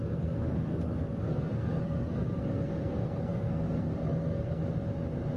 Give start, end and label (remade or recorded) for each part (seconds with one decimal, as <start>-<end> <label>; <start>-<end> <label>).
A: 0.0-4.6 remade; 4.6-5.4 recorded